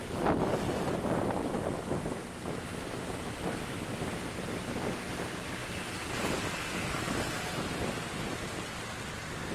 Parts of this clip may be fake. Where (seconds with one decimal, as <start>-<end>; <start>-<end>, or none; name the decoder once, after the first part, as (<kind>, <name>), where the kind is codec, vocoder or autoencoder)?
none